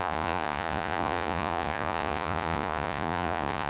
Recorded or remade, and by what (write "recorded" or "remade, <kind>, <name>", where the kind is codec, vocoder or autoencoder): remade, vocoder, Vocos